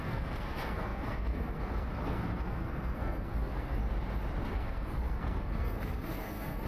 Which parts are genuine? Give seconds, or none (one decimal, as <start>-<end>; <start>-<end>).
3.8-4.5